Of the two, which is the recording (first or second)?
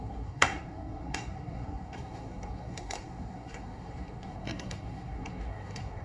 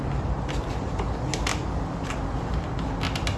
second